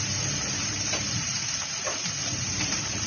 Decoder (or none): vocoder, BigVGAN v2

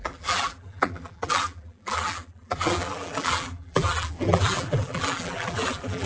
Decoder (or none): vocoder, BigVGAN v2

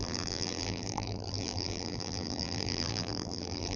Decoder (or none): vocoder, BigVGAN v2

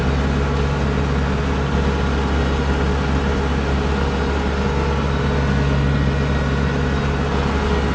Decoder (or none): none